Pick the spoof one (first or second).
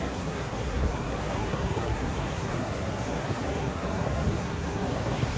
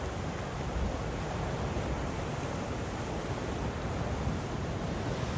first